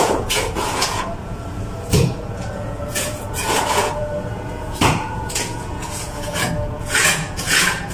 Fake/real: fake